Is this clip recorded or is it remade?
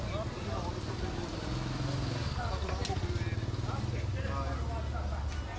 recorded